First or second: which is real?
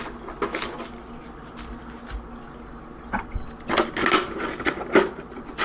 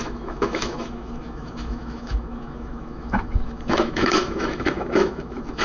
first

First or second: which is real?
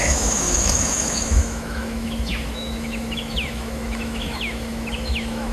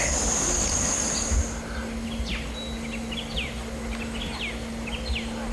second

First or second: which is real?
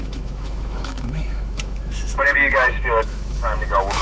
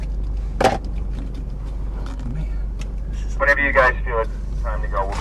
second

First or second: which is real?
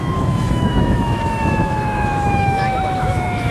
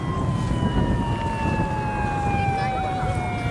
second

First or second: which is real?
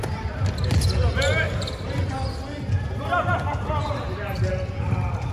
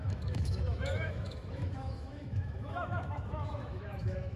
first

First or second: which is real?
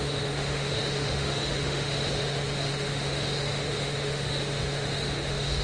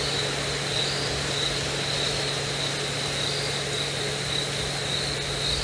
second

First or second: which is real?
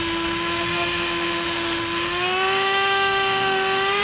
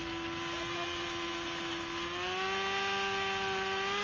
second